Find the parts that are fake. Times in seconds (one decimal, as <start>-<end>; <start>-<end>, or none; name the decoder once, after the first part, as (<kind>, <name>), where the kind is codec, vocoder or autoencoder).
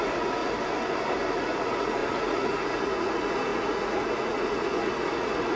0.0-0.4 (vocoder, Vocos); 1.3-5.6